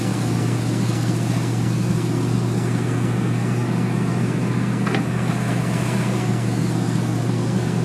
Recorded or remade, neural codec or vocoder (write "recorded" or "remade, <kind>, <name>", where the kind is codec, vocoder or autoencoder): remade, codec, SNAC